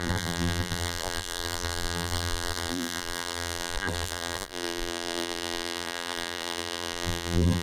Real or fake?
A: fake